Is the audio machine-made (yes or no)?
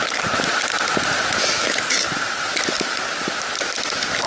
yes